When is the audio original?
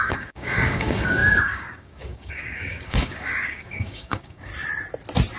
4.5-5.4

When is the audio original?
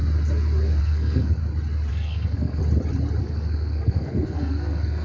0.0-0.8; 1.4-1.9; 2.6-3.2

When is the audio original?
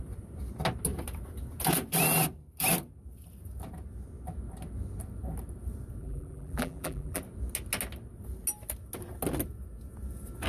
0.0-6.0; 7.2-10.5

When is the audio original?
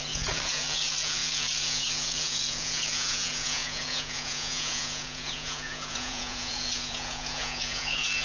none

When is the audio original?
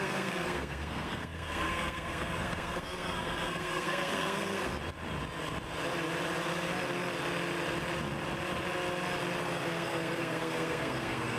4.7-9.4